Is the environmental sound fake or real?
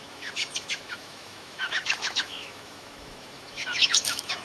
fake